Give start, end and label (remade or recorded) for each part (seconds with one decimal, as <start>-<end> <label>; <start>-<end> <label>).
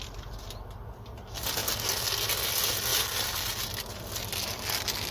0.0-5.1 recorded